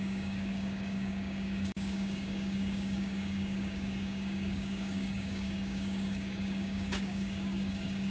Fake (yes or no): yes